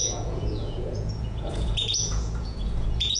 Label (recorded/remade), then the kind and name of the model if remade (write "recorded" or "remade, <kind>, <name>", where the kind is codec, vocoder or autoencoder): remade, vocoder, Vocos